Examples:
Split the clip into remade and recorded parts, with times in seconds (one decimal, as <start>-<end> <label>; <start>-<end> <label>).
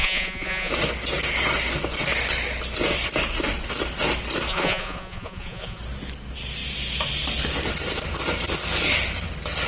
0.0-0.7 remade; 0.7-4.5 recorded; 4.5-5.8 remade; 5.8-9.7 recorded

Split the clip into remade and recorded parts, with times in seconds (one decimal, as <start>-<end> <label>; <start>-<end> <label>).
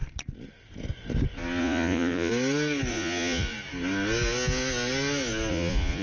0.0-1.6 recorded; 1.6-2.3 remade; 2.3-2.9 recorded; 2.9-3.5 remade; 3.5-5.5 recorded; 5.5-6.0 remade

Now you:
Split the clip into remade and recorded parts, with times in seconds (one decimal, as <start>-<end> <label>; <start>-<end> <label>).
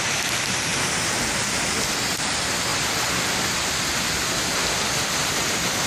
0.0-5.9 recorded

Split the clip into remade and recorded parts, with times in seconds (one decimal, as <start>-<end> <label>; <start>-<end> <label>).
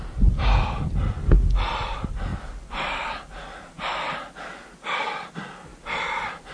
0.0-6.5 recorded